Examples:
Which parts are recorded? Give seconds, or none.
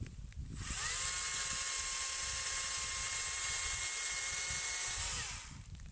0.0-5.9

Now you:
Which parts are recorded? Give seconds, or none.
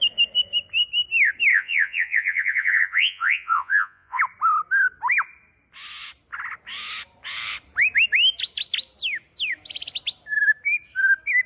0.0-1.5; 4.2-11.5